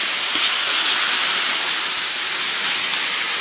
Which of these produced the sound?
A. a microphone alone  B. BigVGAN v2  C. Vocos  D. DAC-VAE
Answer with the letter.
A